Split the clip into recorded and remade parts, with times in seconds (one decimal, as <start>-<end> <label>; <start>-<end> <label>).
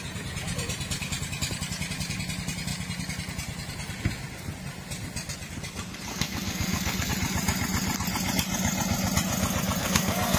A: 0.0-6.1 recorded; 6.1-7.1 remade; 7.1-9.8 recorded; 9.8-10.4 remade